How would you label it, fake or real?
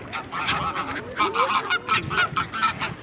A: real